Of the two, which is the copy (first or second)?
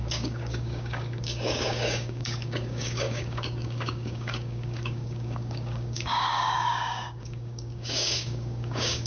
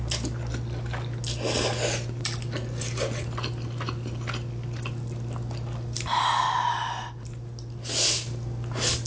first